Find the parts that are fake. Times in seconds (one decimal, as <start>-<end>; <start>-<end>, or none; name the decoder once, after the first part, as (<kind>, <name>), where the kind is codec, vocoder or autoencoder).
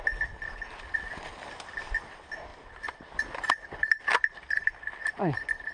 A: none